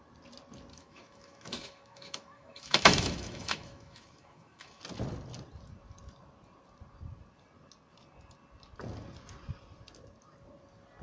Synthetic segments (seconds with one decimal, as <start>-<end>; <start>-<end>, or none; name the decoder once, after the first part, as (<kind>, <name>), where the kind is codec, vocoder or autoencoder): 0.7-4.8 (autoencoder, DAC-VAE)